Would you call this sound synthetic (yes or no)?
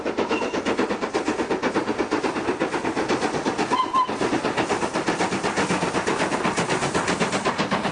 no